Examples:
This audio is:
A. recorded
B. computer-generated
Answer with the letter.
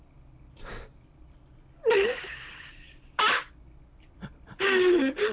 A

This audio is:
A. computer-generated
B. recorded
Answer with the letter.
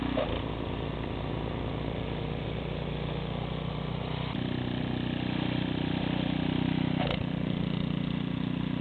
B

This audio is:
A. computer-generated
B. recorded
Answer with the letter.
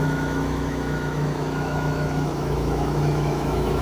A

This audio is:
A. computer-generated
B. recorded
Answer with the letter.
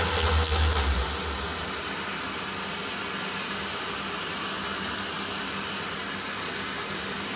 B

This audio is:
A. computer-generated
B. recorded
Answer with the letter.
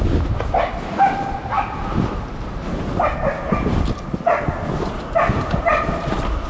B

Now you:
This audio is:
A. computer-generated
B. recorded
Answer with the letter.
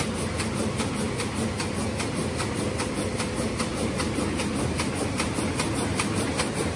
B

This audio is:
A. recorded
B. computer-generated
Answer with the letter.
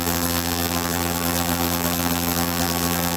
B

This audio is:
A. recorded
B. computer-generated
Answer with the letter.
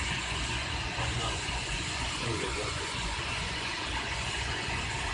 B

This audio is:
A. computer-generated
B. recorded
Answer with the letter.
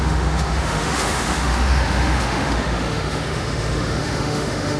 A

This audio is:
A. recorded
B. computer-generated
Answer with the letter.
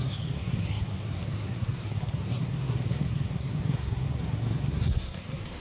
B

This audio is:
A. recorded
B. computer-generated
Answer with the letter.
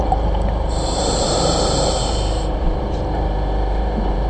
B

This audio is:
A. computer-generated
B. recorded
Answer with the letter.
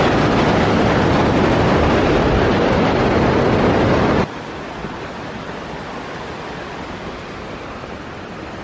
B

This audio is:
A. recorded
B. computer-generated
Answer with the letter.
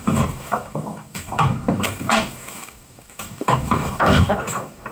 B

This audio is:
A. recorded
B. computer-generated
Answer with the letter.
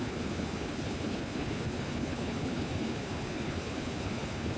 B